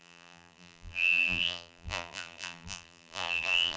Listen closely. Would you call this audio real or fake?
fake